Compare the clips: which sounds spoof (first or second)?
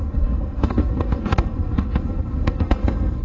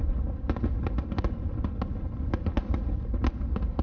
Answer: first